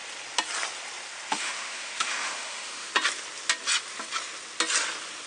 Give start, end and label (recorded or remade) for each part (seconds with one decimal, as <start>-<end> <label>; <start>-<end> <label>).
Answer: 0.0-1.3 recorded; 1.3-2.9 remade; 2.9-5.3 recorded